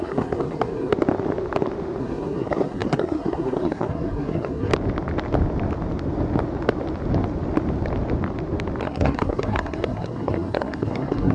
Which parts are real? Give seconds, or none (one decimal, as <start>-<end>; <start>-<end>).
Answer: 0.9-2.0; 4.7-8.8